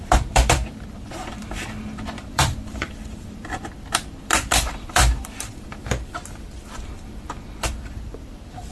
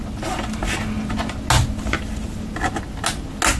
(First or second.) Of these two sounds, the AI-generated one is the first